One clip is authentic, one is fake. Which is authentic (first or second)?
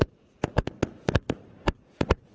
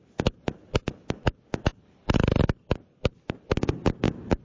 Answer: second